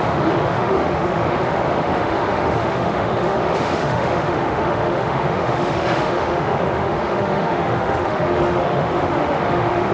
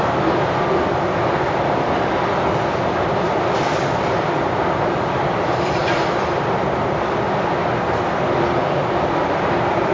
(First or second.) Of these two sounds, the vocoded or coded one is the first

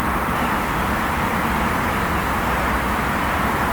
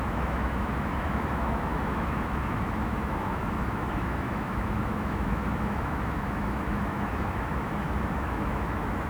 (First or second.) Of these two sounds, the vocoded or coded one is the second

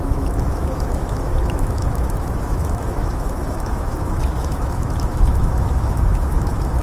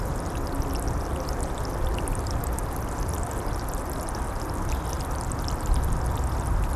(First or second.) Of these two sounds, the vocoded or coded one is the first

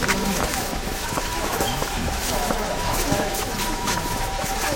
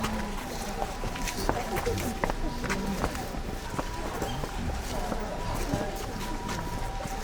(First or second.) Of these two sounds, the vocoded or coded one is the first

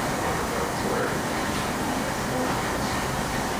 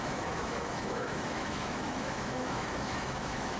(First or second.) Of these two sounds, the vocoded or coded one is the second